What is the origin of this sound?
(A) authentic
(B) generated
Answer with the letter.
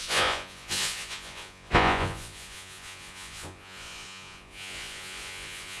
B